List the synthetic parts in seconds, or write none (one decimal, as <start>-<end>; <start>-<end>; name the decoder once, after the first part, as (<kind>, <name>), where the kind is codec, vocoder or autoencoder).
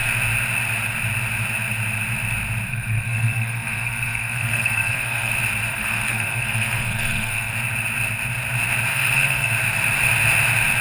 2.7-5.3 (codec, SNAC); 5.7-7.5; 8.9-9.5